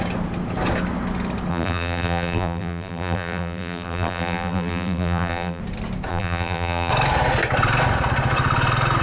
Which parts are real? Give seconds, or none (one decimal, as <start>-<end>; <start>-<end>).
0.0-1.5; 5.6-6.1; 6.9-9.0